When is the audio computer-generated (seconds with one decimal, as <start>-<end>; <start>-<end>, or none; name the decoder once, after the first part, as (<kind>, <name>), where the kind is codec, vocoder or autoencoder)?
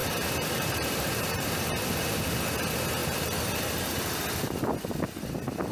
0.0-2.4 (vocoder, BigVGAN v2)